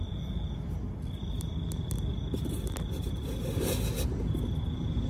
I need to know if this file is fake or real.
real